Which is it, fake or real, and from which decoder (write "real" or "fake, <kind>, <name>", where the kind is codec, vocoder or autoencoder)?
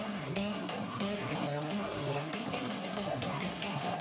fake, codec, SNAC